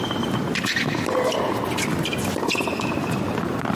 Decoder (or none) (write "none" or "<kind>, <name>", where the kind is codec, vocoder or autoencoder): none